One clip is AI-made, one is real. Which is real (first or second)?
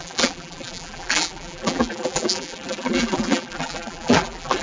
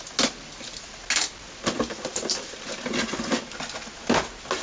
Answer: second